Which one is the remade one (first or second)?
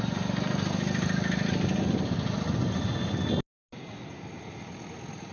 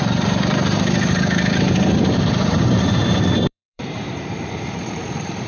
second